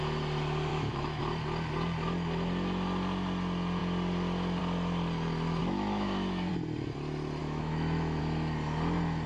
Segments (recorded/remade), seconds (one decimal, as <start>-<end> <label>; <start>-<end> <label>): 0.0-0.7 recorded; 0.7-1.2 remade; 1.2-5.6 recorded; 5.6-6.5 remade; 6.5-7.4 recorded; 7.4-8.2 remade; 8.2-9.3 recorded